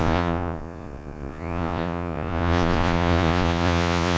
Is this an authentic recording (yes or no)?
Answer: no